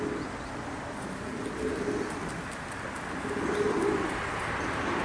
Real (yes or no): yes